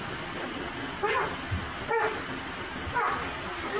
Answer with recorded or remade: recorded